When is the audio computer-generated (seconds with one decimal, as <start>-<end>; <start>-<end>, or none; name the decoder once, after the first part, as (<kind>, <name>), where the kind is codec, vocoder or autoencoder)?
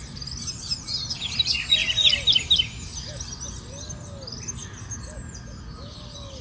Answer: none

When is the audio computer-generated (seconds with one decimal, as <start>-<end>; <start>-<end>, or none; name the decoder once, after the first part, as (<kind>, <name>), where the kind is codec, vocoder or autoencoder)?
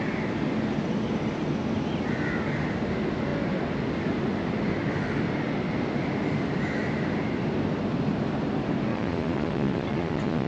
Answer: 8.9-10.5 (vocoder, Vocos)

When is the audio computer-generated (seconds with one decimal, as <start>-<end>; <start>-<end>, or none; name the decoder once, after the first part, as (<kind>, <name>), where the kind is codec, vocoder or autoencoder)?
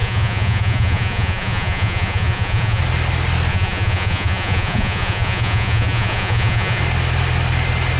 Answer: 0.0-2.8 (vocoder, Vocos); 3.5-6.8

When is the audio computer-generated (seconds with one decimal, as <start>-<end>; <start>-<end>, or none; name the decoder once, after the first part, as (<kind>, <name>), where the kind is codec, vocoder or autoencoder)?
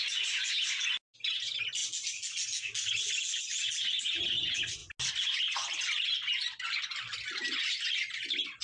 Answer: none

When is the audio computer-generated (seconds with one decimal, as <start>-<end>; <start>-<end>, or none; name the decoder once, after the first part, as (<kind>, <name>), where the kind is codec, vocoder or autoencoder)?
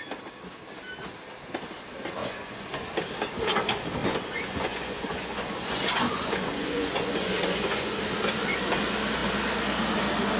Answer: 2.2-2.9 (vocoder, Vocos); 4.0-8.0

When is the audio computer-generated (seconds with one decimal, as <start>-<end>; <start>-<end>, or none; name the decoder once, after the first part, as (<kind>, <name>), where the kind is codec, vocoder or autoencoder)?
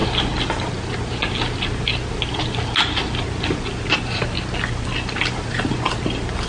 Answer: none